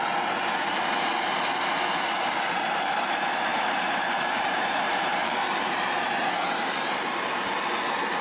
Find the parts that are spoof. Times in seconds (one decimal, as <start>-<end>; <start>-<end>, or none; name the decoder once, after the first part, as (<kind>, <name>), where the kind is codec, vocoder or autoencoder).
0.7-1.9 (vocoder, BigVGAN v2); 3.5-7.0